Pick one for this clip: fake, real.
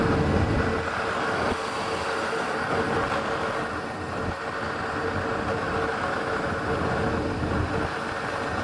real